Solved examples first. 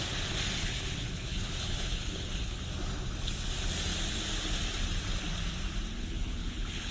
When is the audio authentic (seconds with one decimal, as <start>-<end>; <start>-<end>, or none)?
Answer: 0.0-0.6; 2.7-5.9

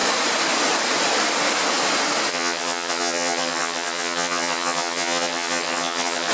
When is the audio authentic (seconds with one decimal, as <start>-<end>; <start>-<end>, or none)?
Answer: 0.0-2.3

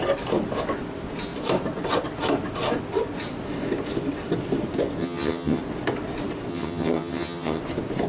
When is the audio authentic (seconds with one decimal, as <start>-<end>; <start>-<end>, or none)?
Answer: 0.0-5.0; 5.6-6.5; 7.6-8.1

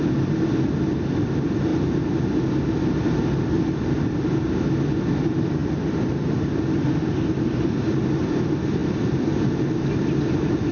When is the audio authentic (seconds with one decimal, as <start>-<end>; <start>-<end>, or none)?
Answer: 0.0-10.7

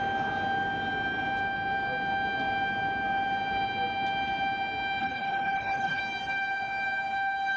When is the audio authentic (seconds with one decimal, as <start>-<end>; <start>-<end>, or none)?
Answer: 0.0-5.0; 6.0-7.6

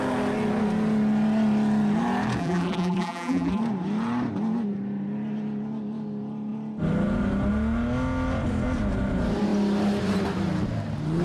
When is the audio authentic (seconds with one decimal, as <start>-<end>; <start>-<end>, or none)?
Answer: 0.0-2.4; 3.6-11.2

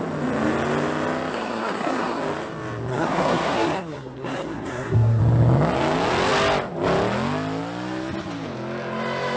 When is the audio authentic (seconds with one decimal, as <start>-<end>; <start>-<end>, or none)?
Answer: 0.0-1.3; 2.2-2.9; 5.2-9.4